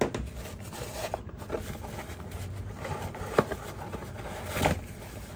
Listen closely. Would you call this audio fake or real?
real